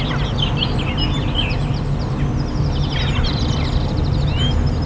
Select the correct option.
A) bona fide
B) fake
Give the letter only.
A